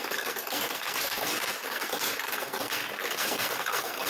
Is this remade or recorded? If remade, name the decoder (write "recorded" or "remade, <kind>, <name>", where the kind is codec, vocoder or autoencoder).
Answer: remade, codec, SNAC